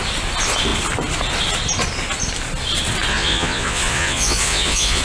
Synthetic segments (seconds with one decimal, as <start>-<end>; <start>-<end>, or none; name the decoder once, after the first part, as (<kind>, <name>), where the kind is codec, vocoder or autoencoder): 3.1-5.0 (vocoder, Vocos)